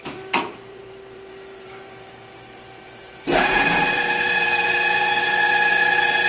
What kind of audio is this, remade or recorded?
remade